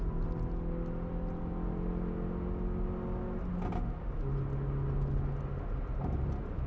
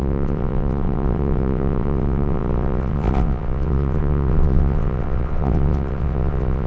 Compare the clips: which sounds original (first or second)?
first